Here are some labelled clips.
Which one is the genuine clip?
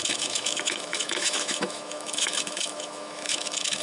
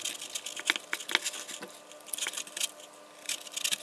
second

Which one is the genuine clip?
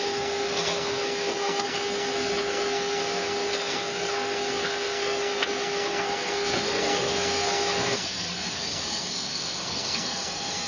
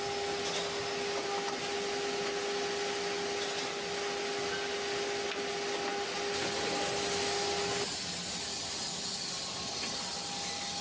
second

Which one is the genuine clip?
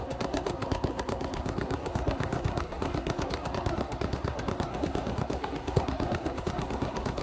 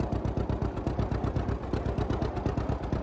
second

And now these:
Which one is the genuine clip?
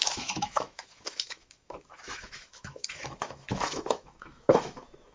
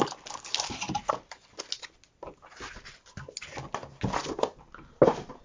second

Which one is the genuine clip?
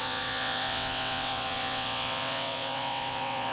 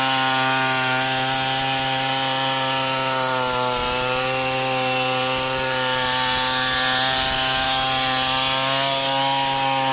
second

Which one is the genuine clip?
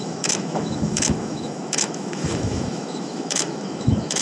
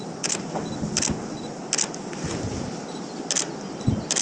second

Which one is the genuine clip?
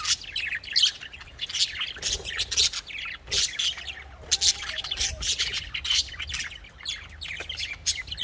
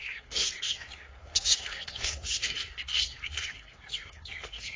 first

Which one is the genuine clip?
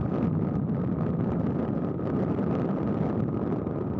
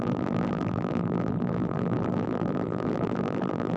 first